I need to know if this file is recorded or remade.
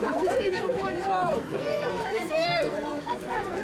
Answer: remade